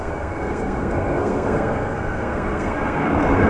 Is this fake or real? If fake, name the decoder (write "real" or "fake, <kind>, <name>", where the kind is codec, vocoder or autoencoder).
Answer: fake, codec, SNAC